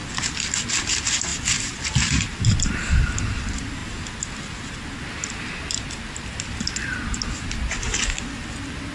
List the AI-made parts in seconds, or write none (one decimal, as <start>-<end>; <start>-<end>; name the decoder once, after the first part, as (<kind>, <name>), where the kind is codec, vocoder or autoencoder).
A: none